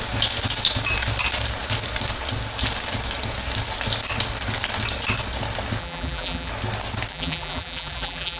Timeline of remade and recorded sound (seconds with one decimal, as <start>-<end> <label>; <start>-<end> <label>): 0.0-5.8 recorded; 5.8-6.5 remade; 6.5-7.1 recorded; 7.1-8.4 remade